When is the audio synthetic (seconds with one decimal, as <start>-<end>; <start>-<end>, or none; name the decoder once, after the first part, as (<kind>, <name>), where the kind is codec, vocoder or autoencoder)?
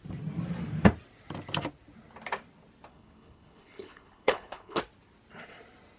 2.9-4.8 (codec, HILCodec)